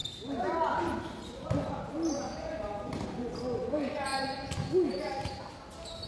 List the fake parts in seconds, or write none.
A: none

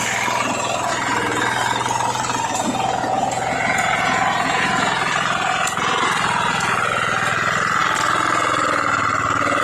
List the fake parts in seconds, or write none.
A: 2.6-6.9 (vocoder, Vocos)